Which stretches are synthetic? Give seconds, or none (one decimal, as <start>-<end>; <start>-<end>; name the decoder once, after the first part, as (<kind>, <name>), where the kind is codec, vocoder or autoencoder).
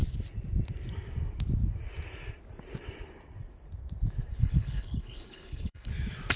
4.3-5.9 (codec, HILCodec)